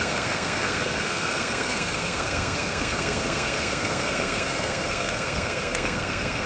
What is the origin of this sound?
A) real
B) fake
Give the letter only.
B